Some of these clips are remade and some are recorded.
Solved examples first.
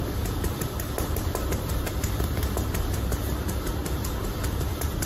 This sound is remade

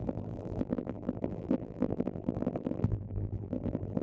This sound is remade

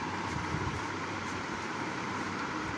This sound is remade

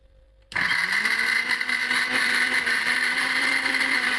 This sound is remade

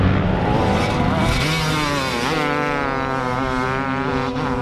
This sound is recorded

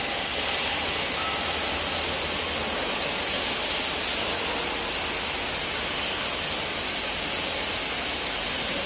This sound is recorded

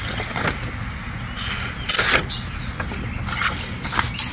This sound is recorded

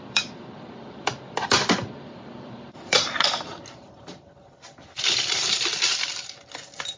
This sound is remade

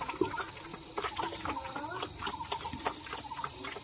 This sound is remade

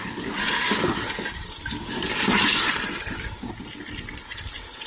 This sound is recorded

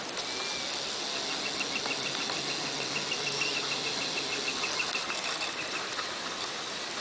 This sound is recorded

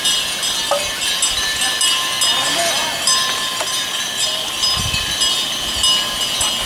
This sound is recorded